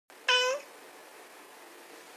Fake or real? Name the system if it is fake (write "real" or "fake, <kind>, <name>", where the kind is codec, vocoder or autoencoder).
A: real